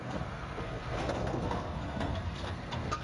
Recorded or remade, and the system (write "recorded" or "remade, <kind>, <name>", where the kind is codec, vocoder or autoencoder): remade, codec, SNAC